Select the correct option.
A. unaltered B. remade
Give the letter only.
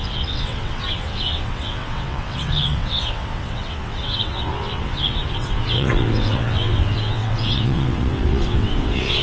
B